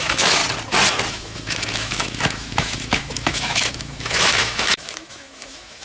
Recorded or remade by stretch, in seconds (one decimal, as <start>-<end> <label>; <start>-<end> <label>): 0.0-0.4 remade; 0.4-1.1 recorded; 1.1-5.8 remade